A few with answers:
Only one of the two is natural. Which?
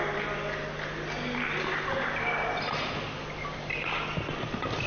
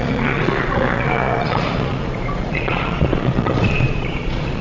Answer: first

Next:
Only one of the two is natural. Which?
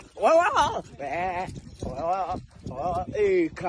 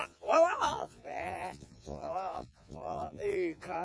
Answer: first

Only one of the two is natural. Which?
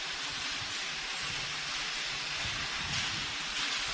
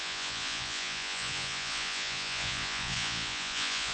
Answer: first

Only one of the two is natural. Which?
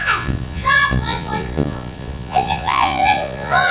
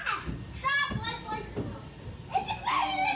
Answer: second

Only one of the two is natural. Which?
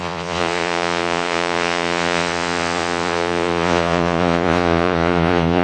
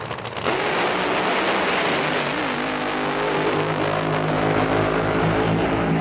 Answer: second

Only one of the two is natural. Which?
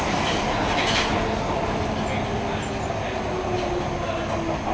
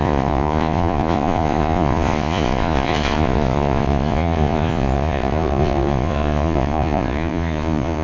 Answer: first